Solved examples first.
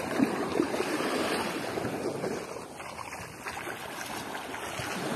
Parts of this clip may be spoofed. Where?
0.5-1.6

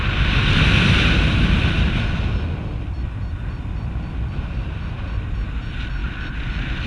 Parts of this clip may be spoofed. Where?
none

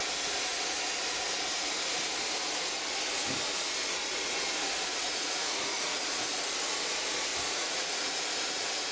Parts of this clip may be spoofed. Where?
5.0-6.3; 7.3-8.2